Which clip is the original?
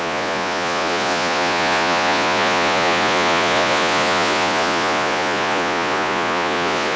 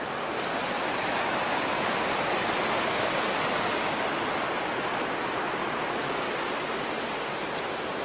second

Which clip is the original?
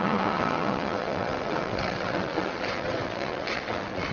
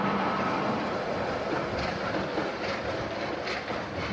second